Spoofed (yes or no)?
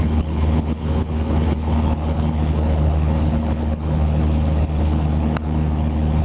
yes